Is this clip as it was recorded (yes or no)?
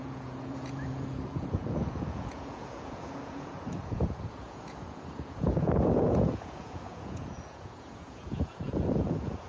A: no